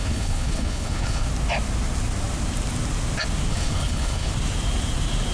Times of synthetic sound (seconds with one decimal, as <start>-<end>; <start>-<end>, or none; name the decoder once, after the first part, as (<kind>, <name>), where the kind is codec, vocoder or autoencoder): 0.0-1.3 (codec, HILCodec); 3.5-4.3